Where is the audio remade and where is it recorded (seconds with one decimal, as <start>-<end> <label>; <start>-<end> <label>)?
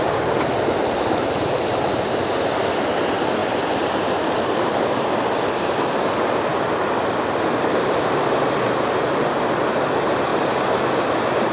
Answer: 0.0-11.5 recorded